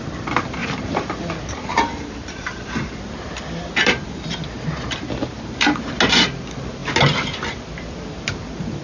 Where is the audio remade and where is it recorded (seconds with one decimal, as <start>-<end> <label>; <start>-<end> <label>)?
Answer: 0.0-0.6 recorded; 0.6-4.1 remade; 4.1-8.8 recorded